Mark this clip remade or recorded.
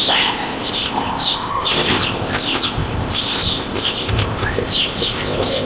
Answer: remade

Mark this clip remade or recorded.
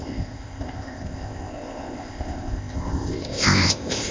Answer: remade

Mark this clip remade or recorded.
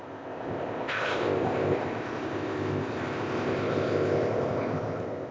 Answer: remade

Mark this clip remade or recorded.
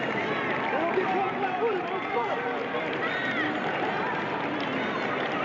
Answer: recorded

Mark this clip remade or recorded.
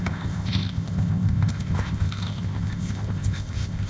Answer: remade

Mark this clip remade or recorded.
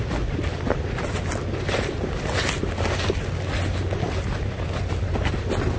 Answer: recorded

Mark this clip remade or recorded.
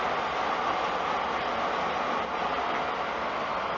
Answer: recorded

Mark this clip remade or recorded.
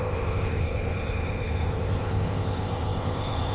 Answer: remade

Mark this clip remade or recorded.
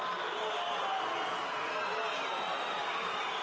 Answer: recorded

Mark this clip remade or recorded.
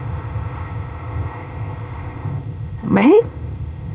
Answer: remade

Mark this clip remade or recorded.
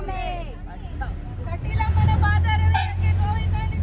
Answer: recorded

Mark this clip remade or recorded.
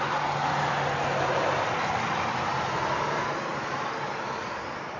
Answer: recorded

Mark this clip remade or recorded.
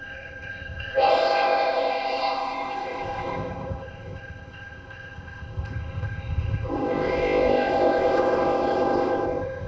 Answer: remade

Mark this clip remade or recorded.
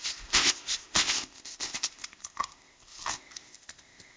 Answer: remade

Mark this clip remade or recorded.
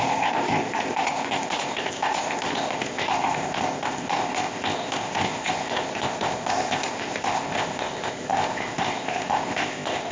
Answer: remade